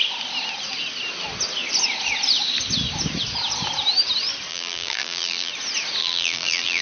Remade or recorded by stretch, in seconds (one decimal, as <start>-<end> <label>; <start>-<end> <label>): 0.0-4.5 recorded; 4.5-5.5 remade; 5.5-6.0 recorded; 6.0-6.8 remade